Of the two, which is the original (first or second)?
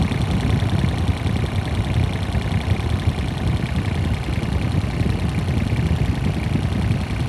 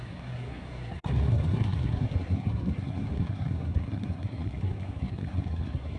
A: first